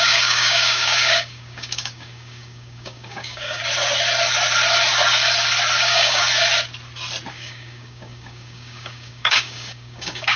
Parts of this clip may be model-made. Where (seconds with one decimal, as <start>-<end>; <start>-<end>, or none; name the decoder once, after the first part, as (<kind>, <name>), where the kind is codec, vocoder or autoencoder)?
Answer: 0.0-3.6 (codec, DAC); 5.8-6.2; 7.3-10.4